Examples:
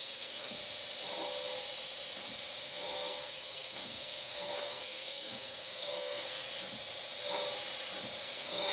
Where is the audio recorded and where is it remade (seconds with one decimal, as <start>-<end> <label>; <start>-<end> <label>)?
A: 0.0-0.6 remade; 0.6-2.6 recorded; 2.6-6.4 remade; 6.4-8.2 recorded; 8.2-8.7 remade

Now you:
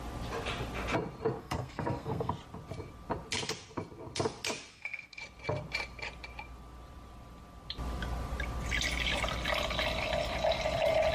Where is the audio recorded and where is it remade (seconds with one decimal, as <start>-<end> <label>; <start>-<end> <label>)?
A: 0.0-1.4 recorded; 1.4-2.3 remade; 2.3-4.7 recorded; 4.7-5.2 remade; 5.2-11.1 recorded

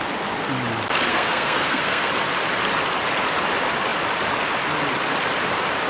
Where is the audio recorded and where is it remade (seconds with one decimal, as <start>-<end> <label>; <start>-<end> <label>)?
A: 0.0-1.1 recorded; 1.1-2.1 remade; 2.1-5.9 recorded